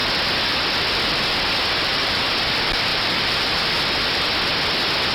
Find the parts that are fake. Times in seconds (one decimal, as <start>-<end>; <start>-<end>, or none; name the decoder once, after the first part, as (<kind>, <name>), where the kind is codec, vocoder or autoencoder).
1.8-2.4 (vocoder, BigVGAN v2); 2.9-3.7

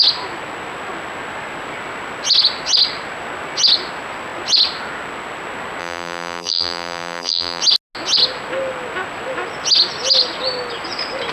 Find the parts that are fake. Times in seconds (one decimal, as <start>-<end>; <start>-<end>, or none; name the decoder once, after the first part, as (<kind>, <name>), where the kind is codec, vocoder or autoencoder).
5.8-7.6 (vocoder, BigVGAN v2)

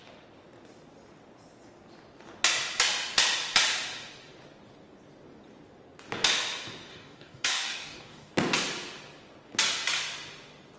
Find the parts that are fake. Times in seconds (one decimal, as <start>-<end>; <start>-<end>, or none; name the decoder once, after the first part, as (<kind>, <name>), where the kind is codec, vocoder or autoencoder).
6.9-8.3 (codec, DAC)

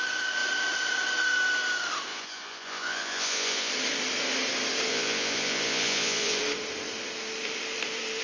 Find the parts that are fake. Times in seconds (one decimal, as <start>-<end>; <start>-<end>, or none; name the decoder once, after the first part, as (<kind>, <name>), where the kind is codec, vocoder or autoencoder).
2.1-3.7 (vocoder, Vocos); 4.9-6.4

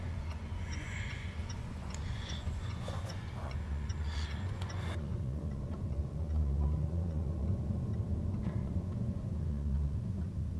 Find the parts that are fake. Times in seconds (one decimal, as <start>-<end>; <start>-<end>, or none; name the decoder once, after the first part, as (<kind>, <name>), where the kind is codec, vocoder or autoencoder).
0.0-7.9 (vocoder, Vocos); 8.4-10.6

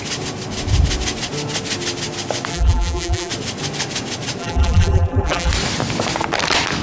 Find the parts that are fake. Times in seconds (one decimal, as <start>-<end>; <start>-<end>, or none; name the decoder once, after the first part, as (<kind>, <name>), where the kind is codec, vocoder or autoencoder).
2.5-3.3 (vocoder, BigVGAN v2); 4.4-5.5